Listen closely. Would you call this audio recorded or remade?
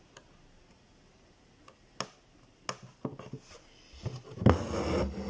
recorded